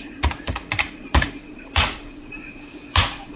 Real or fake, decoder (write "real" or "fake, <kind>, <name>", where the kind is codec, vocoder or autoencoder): fake, vocoder, Vocos